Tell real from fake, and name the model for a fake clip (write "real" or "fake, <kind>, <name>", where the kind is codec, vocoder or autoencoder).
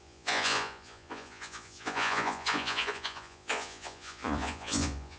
fake, vocoder, Vocos